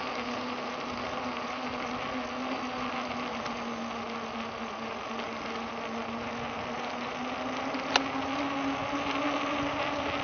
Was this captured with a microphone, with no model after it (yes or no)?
yes